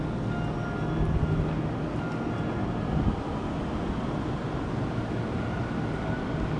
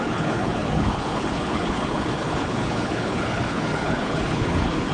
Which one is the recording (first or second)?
first